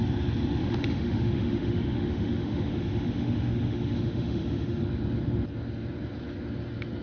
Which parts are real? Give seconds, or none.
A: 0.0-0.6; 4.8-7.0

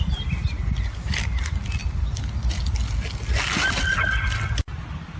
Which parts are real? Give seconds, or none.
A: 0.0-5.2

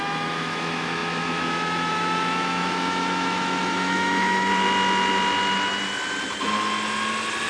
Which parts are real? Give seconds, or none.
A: 4.5-7.5